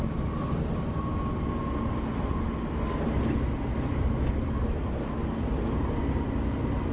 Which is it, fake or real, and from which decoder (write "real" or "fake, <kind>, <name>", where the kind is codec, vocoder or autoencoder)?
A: real